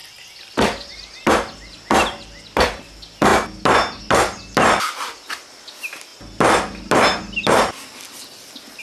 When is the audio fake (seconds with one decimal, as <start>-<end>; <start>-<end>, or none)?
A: none